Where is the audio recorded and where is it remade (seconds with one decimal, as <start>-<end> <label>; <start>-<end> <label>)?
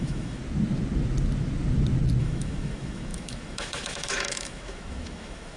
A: 0.0-0.4 remade; 0.4-2.2 recorded; 2.2-5.6 remade